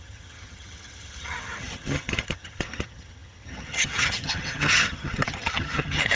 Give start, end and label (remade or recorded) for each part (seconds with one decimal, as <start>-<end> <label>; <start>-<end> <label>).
0.0-6.2 remade

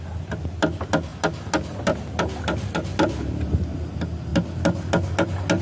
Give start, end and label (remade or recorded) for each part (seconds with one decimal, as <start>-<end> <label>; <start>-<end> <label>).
0.0-5.6 recorded

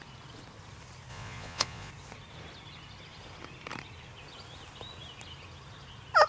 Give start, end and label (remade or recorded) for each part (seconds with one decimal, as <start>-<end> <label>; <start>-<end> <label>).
0.0-1.1 recorded; 1.1-1.9 remade; 1.9-6.3 recorded

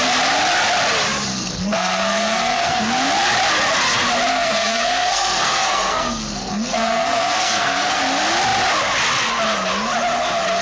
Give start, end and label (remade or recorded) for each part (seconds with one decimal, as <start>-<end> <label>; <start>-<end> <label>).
0.0-1.3 recorded; 1.3-2.9 remade; 2.9-4.3 recorded; 4.3-8.0 remade; 8.0-10.6 recorded

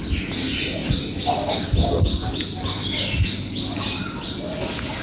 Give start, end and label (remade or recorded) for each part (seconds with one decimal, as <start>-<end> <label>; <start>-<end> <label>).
0.0-5.0 recorded

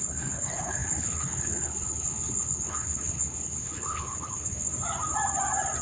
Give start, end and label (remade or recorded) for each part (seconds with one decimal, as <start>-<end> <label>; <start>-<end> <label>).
0.0-4.7 remade; 4.7-5.8 recorded

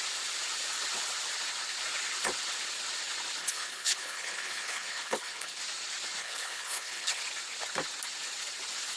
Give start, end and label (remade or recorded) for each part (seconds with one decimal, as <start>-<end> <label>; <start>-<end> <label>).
0.0-3.4 recorded; 3.4-5.6 remade; 5.6-6.2 recorded; 6.2-7.2 remade; 7.2-9.0 recorded

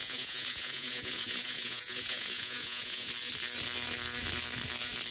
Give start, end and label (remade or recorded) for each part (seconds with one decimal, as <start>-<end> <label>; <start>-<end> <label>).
0.0-3.1 remade; 3.1-5.1 recorded